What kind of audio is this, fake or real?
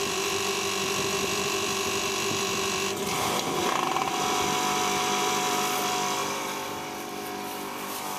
fake